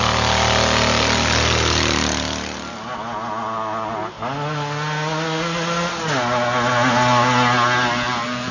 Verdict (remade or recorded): recorded